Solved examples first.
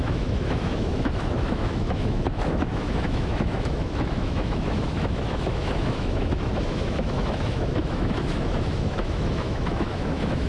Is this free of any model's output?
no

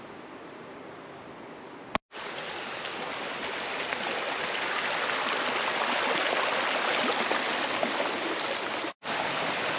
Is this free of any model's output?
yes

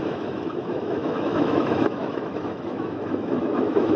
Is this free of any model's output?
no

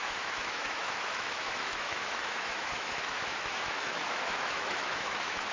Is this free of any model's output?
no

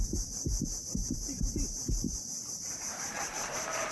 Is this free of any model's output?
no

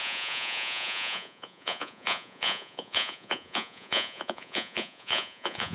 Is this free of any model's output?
no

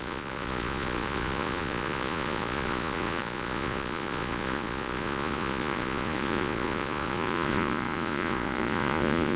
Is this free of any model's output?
no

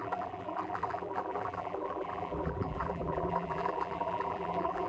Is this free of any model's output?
no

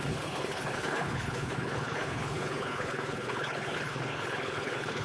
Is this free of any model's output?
no